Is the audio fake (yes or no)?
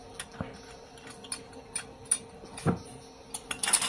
no